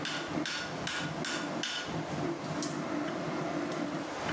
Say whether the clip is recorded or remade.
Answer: recorded